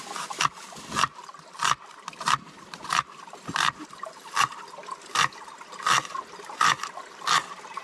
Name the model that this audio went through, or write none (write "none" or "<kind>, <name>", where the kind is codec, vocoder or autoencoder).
none